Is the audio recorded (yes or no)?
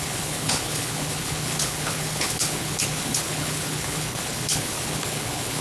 no